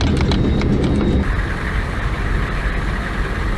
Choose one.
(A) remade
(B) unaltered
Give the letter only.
B